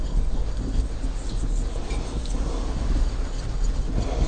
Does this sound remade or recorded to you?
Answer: recorded